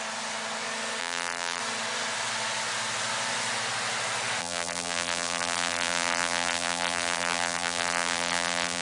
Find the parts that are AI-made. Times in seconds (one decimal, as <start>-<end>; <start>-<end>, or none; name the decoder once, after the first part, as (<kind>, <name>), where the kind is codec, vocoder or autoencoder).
1.0-1.6 (vocoder, BigVGAN v2); 4.4-8.8